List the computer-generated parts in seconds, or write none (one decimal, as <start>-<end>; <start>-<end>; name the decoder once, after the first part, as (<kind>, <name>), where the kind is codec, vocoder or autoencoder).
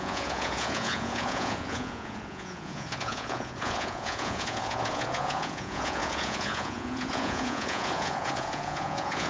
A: 0.0-9.3 (vocoder, Vocos)